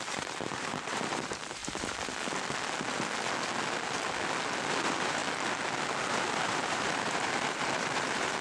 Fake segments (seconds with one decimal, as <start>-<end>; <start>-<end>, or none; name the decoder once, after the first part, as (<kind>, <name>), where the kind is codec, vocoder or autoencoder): 0.0-1.6 (vocoder, BigVGAN v2); 4.7-5.2; 6.1-8.4